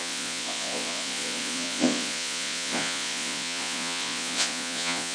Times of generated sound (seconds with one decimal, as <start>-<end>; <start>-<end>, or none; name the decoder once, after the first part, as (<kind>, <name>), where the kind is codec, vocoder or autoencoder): 0.0-5.1 (vocoder, Vocos)